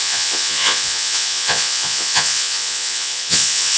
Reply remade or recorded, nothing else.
remade